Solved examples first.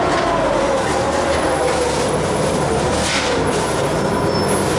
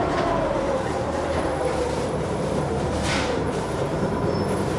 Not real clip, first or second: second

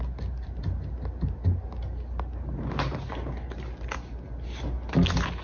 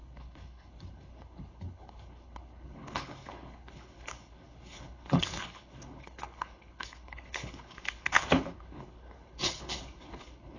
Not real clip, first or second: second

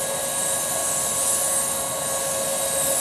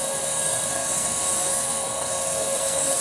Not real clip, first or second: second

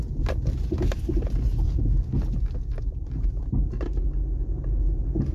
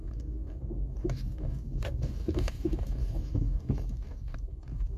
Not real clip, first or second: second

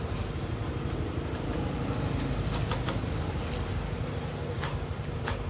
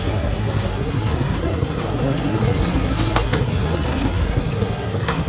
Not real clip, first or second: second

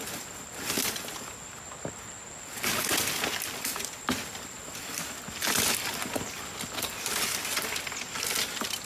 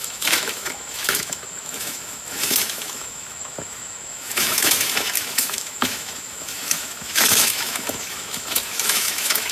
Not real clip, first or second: second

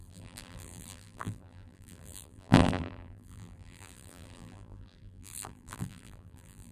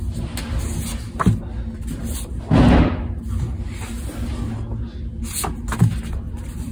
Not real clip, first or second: first